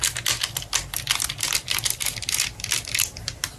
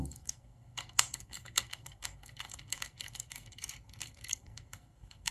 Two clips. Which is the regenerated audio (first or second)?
second